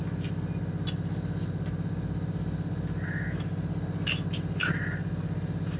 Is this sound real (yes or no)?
yes